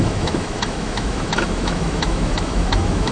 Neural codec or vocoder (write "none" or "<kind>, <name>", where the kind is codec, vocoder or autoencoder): autoencoder, DAC-VAE